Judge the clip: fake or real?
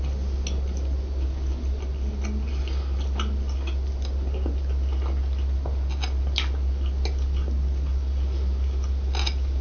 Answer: real